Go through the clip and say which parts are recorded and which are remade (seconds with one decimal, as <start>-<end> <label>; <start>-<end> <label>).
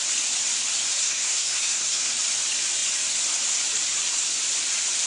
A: 0.0-1.0 recorded; 1.0-2.1 remade; 2.1-5.1 recorded